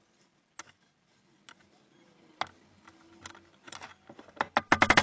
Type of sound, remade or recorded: recorded